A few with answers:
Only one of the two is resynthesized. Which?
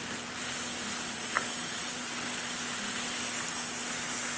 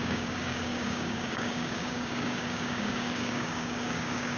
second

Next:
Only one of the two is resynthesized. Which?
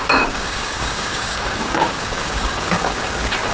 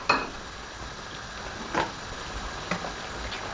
first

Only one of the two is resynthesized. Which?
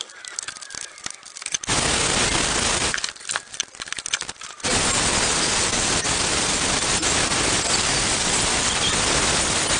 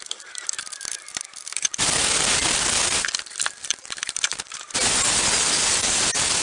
second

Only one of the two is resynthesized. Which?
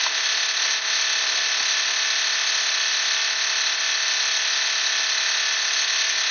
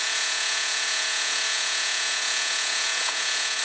second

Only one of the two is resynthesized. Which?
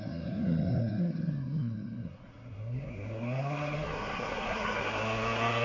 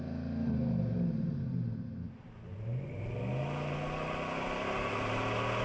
first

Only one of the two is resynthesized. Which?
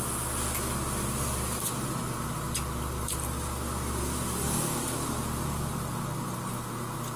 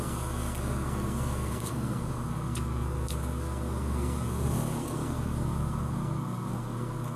second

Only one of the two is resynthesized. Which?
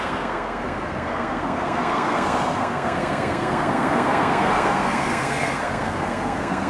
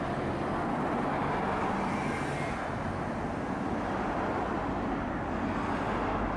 first